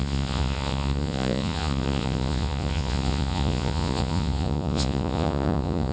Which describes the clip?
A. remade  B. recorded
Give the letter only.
A